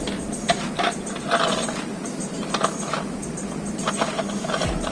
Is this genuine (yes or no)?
yes